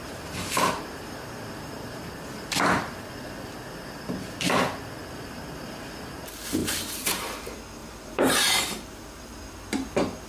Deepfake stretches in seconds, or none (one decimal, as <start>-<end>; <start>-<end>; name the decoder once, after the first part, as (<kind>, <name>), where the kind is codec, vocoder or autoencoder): 0.0-2.0 (vocoder, BigVGAN v2); 6.6-7.2; 7.8-9.2